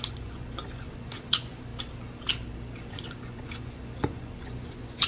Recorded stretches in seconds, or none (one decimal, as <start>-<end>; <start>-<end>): 1.7-2.9